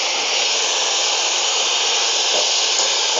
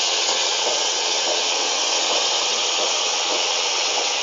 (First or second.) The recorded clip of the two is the first